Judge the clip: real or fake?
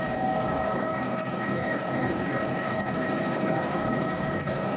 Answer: fake